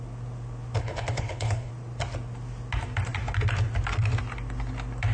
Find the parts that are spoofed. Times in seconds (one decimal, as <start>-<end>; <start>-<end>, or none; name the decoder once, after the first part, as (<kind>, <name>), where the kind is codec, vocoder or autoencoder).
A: 0.8-1.7 (codec, HILCodec)